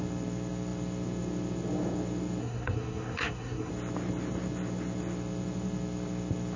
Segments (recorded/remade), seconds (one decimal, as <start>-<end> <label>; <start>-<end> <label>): 0.0-2.4 recorded; 2.4-3.7 remade; 3.7-6.6 recorded